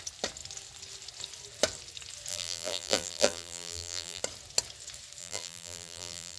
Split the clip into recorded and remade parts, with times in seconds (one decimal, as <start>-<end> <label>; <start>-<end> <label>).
0.0-2.3 recorded; 2.3-4.2 remade; 4.2-5.2 recorded; 5.2-6.4 remade